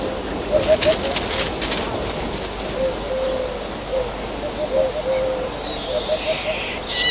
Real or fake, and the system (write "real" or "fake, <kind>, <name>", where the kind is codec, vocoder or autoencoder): real